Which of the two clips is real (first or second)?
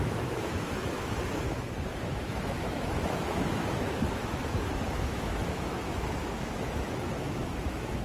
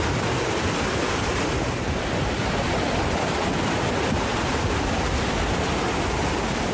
second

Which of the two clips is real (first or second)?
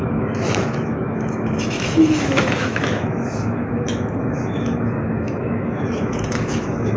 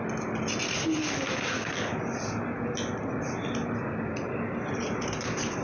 second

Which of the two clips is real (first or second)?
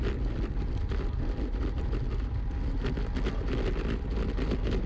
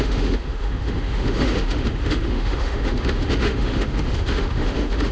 first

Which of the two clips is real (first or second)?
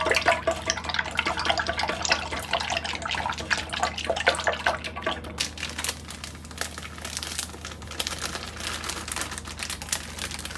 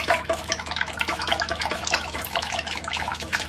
first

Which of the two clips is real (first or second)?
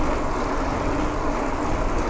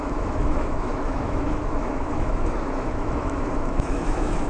first